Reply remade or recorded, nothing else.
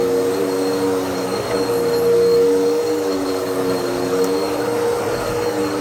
remade